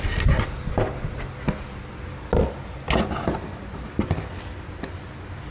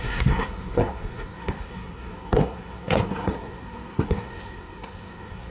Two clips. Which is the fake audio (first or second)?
second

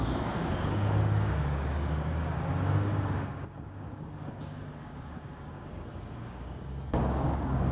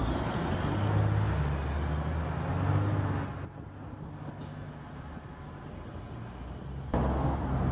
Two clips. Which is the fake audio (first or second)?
first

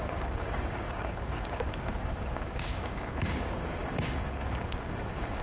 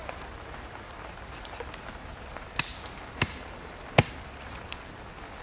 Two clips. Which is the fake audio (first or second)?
first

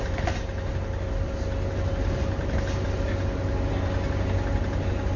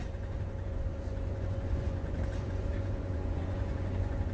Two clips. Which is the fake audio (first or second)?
second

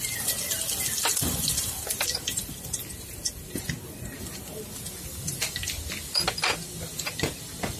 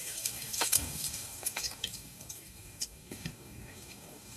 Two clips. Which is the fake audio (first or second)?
second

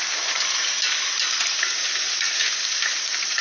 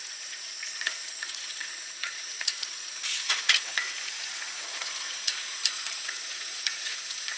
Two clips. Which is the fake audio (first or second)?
second